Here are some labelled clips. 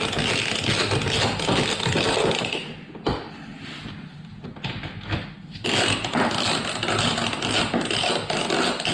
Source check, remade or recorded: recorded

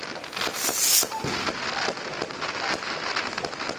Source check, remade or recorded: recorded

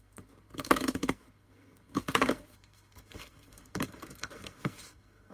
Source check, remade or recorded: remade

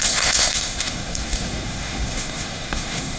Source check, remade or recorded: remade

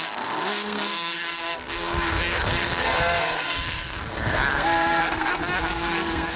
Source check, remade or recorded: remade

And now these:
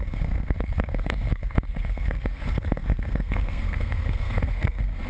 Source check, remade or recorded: remade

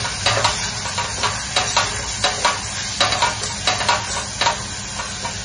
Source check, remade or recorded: recorded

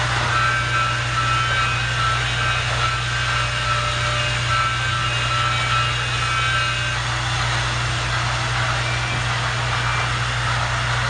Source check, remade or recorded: recorded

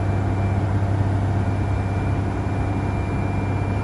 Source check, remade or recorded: recorded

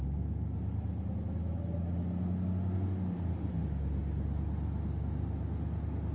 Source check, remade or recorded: recorded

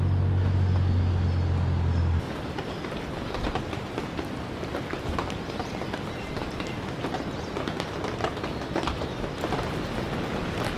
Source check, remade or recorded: recorded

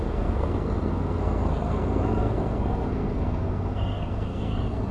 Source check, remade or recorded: remade